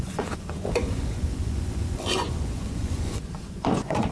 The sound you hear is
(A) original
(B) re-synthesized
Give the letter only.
B